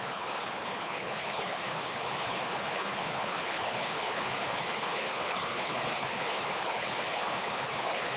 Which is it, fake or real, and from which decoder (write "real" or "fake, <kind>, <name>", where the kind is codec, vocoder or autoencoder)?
fake, codec, HILCodec